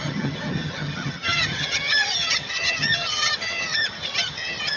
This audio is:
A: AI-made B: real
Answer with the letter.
A